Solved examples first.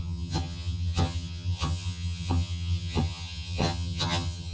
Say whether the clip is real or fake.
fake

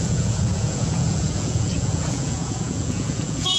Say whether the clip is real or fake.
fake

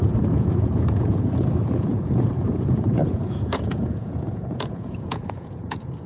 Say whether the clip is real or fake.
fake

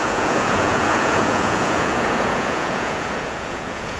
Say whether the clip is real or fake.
fake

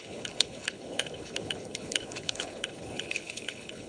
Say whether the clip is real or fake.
fake